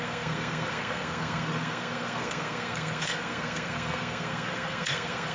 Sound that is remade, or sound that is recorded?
remade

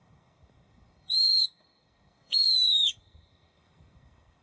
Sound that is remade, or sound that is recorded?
remade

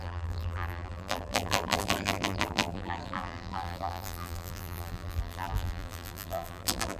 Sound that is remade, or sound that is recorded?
remade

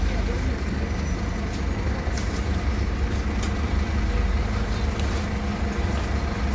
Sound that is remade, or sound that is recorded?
recorded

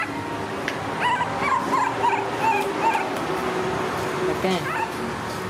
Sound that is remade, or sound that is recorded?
recorded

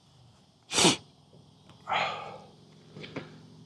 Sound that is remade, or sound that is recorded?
recorded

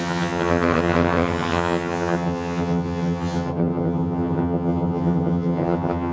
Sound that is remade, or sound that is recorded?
remade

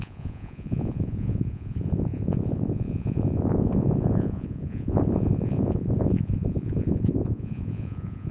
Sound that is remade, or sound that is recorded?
remade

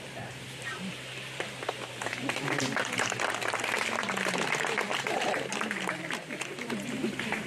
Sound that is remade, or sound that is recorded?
remade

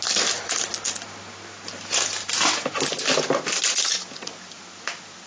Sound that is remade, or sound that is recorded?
recorded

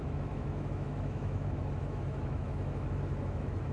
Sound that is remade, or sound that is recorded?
remade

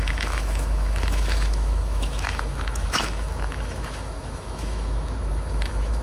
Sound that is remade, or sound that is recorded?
remade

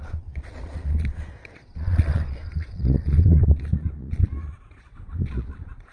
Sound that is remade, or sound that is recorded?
remade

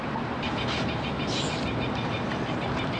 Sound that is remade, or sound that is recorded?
recorded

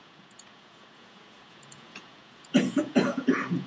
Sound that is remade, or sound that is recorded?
remade